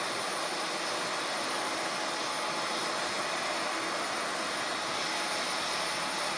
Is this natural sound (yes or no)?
yes